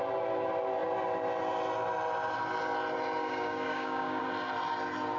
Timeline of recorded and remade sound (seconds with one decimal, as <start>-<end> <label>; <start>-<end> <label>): 0.0-3.2 recorded; 3.2-4.2 remade; 4.2-5.2 recorded